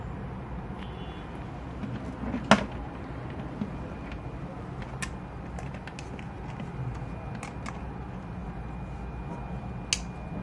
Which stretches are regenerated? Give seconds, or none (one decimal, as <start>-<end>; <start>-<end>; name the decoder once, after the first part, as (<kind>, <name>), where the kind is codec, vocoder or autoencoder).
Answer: 8.4-9.0 (vocoder, BigVGAN v2)